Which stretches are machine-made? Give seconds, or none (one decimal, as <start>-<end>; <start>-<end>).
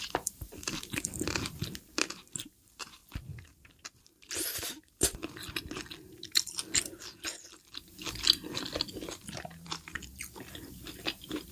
0.0-1.1; 2.5-3.0; 4.0-5.2; 9.1-10.1; 10.7-11.5